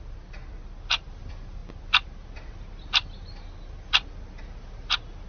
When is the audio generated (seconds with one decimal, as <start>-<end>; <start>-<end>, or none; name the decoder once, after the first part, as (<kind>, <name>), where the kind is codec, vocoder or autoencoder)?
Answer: none